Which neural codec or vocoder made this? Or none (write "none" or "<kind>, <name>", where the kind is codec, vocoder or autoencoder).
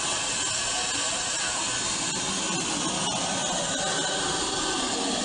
none